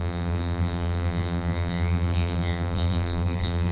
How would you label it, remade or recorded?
remade